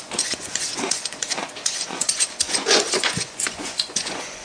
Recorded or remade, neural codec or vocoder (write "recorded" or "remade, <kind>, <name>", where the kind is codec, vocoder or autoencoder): remade, vocoder, Vocos